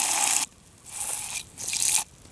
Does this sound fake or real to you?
real